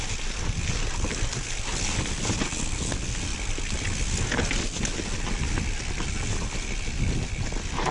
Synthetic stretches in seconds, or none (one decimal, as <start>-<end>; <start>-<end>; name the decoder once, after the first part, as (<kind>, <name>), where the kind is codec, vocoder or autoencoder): none